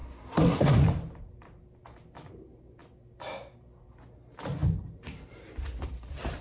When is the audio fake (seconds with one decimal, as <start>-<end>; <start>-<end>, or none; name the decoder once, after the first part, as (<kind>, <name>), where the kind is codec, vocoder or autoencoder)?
0.0-0.8 (codec, SNAC)